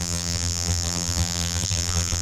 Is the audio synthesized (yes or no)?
yes